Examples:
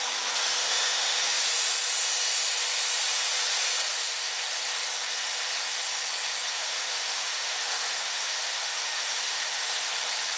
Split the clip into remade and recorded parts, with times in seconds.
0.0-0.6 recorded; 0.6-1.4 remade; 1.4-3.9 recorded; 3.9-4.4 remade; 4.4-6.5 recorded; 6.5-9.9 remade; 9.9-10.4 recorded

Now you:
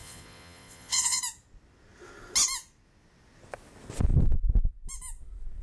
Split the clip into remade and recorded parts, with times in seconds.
0.0-1.2 remade; 1.2-5.6 recorded